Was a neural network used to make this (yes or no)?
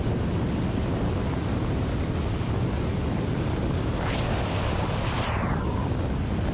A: no